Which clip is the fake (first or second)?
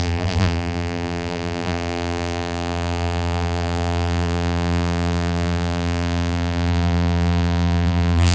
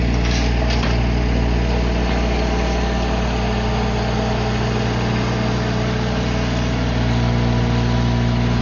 first